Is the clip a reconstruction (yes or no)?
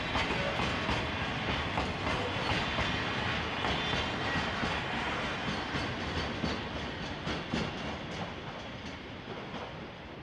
no